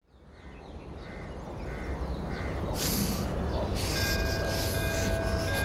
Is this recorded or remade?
recorded